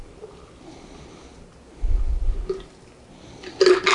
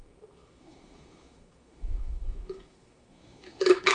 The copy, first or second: second